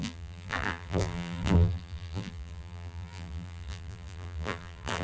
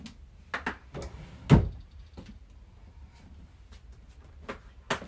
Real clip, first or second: second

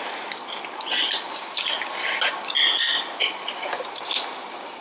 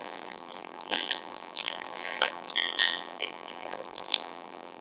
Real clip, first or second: first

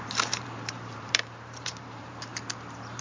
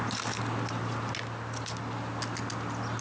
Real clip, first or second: second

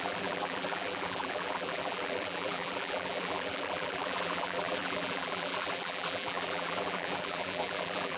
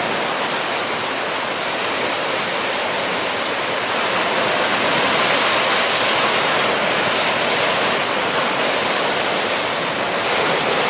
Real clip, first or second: second